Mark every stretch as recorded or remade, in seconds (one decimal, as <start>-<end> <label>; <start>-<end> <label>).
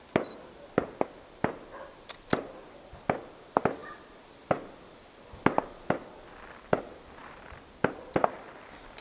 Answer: 0.0-9.0 recorded